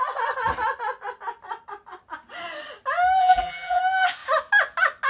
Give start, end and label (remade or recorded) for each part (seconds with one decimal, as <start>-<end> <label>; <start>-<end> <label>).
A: 0.0-3.2 recorded; 3.2-3.8 remade; 3.8-5.1 recorded